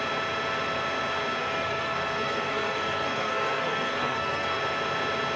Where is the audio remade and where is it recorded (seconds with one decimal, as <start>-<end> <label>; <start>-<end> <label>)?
0.0-1.4 recorded; 1.4-4.6 remade; 4.6-5.4 recorded